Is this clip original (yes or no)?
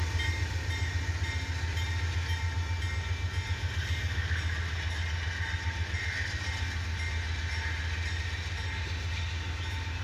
yes